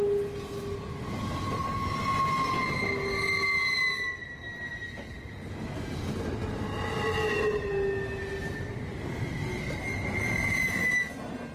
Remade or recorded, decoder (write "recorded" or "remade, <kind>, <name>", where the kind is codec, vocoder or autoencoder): recorded